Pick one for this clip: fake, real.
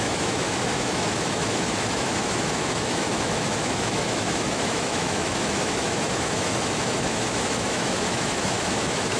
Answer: fake